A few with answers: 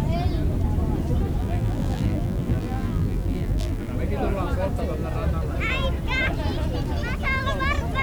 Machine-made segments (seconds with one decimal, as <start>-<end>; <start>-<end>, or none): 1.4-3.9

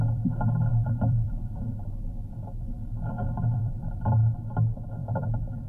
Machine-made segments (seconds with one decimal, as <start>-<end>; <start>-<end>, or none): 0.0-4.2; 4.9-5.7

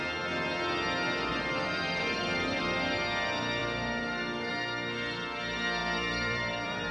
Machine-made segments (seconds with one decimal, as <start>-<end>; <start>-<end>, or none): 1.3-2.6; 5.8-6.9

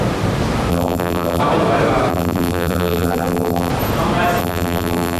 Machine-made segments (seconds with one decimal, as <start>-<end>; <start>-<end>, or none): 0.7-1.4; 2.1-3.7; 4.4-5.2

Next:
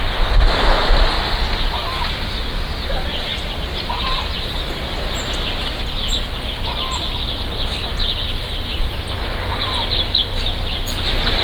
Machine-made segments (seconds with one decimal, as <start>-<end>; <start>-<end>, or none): 3.3-4.6

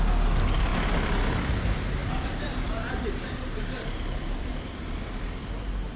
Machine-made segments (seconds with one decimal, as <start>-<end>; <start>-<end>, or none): 2.0-5.0

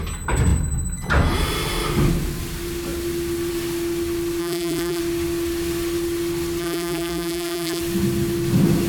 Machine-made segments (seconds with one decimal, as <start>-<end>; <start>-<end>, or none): 4.4-5.0; 6.6-7.8

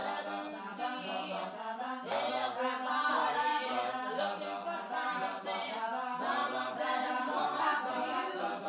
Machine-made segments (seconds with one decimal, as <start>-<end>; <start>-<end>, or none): 5.2-5.8; 6.4-8.7